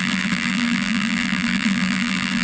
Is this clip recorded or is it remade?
remade